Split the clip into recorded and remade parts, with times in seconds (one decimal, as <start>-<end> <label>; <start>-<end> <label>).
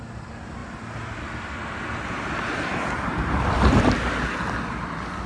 0.0-5.3 recorded